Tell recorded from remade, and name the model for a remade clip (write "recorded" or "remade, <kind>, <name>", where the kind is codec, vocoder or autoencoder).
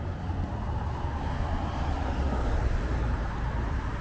recorded